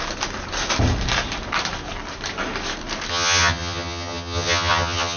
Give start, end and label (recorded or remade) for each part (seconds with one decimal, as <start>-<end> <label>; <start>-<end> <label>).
0.0-3.1 recorded; 3.1-5.2 remade